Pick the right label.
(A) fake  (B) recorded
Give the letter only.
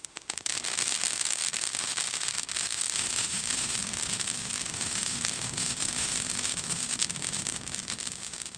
A